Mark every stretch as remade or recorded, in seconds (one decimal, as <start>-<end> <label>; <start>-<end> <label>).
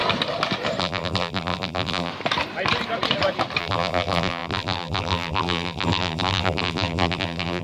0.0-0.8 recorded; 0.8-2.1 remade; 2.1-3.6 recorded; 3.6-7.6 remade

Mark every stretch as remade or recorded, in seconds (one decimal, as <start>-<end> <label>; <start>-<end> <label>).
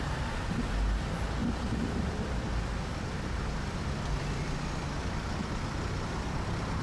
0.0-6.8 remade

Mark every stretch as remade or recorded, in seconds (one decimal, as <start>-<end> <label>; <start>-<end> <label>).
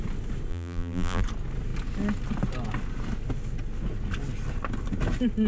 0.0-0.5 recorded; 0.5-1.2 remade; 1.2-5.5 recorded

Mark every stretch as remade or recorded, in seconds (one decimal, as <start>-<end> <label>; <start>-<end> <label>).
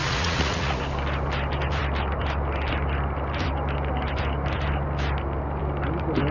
0.0-0.8 remade; 0.8-6.3 recorded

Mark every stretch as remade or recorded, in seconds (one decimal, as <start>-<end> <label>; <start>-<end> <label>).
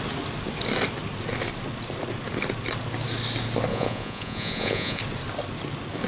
0.0-3.7 recorded; 3.7-5.0 remade; 5.0-6.1 recorded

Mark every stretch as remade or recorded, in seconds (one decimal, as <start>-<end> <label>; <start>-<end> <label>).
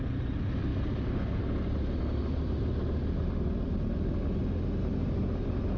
0.0-5.8 recorded